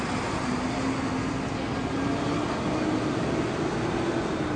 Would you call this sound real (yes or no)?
yes